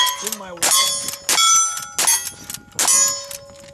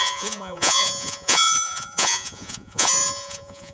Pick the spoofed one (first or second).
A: second